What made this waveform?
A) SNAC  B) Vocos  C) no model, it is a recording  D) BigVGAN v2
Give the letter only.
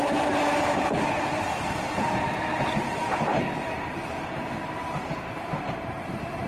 D